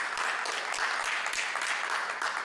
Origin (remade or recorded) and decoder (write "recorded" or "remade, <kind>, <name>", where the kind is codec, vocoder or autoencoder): recorded